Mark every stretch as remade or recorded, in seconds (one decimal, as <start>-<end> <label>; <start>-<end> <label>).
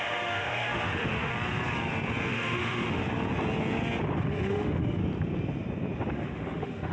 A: 0.0-1.3 remade; 1.3-2.3 recorded; 2.3-3.0 remade; 3.0-4.2 recorded; 4.2-5.0 remade; 5.0-6.1 recorded; 6.1-6.9 remade